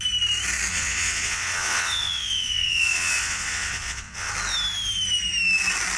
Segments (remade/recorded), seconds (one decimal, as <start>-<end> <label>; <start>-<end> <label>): 0.0-0.7 recorded; 0.7-4.3 remade; 4.3-6.0 recorded